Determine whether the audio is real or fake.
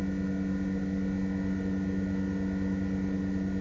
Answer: real